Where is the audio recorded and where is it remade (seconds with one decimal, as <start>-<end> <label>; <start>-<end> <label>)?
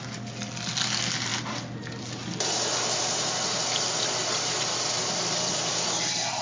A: 0.0-6.4 recorded